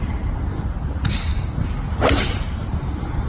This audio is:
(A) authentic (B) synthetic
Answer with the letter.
A